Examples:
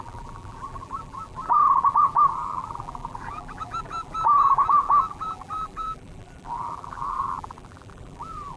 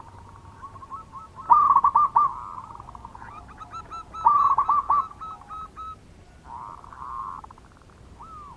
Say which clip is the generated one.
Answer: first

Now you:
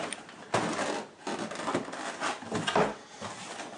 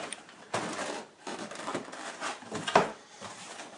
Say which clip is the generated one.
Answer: second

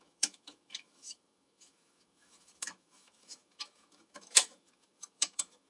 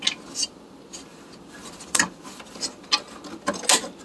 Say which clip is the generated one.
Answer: first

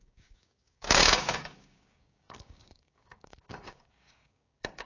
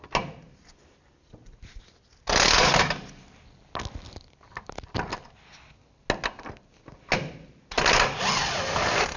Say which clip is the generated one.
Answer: first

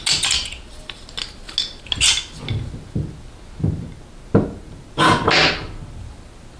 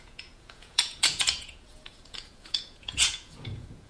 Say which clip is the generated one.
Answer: second